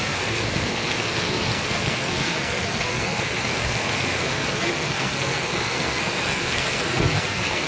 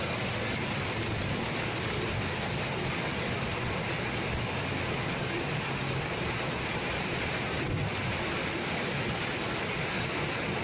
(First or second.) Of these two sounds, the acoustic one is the second